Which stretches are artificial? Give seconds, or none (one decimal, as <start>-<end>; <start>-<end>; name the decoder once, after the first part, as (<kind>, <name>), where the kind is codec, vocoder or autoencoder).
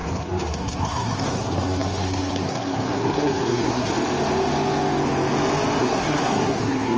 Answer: 0.0-3.9 (codec, SNAC); 5.8-7.0